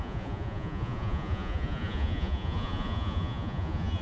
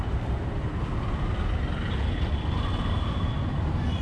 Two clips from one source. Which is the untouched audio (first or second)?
second